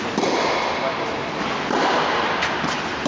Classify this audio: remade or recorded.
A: recorded